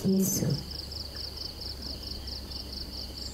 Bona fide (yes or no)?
yes